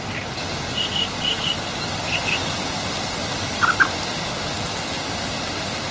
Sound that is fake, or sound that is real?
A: real